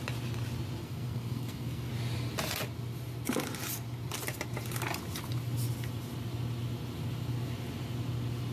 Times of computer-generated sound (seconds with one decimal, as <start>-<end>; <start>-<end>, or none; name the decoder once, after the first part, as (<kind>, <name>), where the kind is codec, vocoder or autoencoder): 0.8-1.9 (codec, SNAC)